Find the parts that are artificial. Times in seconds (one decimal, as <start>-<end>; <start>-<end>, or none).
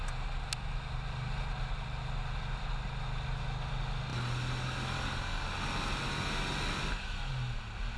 none